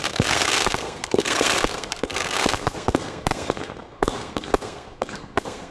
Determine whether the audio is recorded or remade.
remade